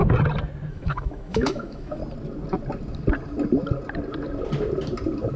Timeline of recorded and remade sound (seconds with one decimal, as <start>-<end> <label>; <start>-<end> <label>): 0.0-0.7 recorded; 0.7-2.0 remade; 2.0-5.4 recorded